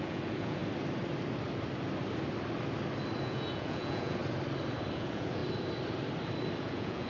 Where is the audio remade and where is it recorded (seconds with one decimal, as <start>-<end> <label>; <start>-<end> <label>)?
0.0-0.6 remade; 0.6-3.2 recorded; 3.2-4.2 remade; 4.2-4.9 recorded; 4.9-5.4 remade; 5.4-6.6 recorded; 6.6-7.1 remade